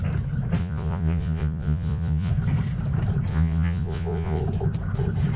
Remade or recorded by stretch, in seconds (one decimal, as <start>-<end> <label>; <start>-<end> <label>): 0.0-0.6 recorded; 0.6-2.3 remade; 2.3-3.3 recorded; 3.3-4.4 remade; 4.4-5.4 recorded